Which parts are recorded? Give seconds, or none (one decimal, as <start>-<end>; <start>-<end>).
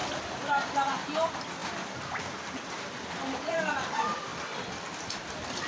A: 0.0-0.5; 1.6-2.7; 4.3-5.7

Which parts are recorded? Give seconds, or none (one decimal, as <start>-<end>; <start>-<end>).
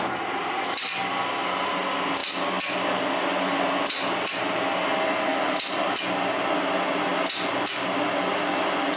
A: 0.0-9.0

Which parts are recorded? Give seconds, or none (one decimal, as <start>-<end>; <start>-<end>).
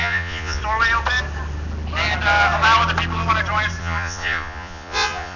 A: 0.6-3.8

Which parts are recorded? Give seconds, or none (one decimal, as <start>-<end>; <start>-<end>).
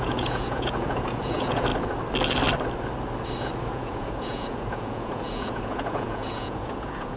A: 1.7-3.6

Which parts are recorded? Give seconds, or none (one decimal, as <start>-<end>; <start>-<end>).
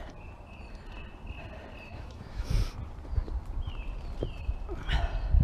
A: 0.0-1.9; 2.6-5.4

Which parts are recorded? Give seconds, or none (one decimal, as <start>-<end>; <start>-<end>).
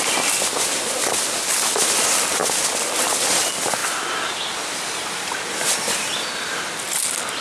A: 0.0-7.4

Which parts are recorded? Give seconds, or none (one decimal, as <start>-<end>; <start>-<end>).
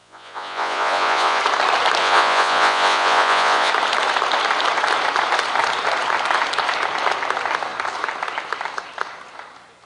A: 1.4-2.0; 3.7-9.9